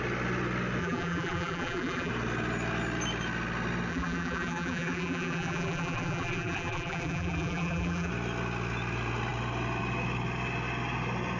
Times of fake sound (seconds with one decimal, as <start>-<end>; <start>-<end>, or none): 0.8-2.1; 3.9-8.1